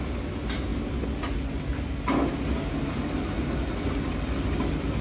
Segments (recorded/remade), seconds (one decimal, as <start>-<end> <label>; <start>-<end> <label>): 0.0-5.0 recorded